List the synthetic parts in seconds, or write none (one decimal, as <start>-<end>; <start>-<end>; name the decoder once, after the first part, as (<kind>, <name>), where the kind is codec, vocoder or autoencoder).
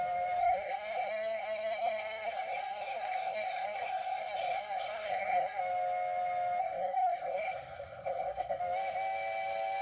0.4-5.6 (codec, SNAC); 6.6-8.6